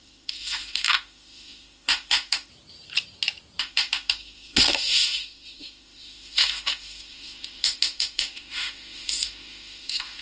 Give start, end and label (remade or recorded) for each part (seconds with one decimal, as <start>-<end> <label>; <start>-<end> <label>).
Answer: 0.0-2.5 remade; 2.5-3.6 recorded; 3.6-10.2 remade